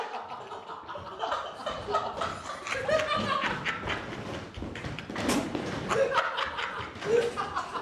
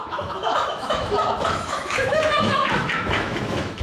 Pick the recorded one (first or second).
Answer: first